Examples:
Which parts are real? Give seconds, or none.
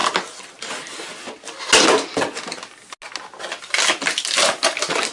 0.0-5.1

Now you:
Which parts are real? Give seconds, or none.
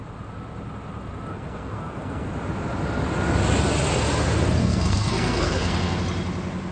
0.0-1.3; 2.3-4.6; 6.0-6.7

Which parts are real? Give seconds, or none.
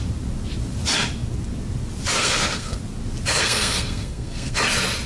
0.0-2.2; 2.8-3.4; 4.6-5.1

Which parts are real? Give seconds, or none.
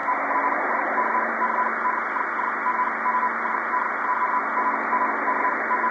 0.0-5.9